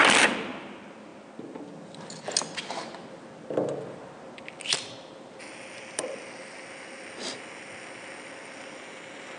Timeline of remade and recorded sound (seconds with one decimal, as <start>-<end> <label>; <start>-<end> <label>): 0.0-9.4 recorded